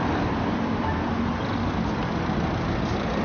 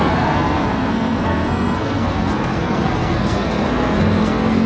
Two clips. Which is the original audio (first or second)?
first